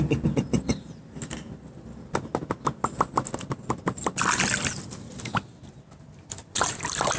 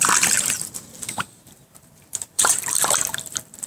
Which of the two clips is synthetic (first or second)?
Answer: second